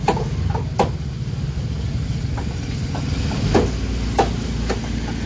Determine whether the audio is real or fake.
real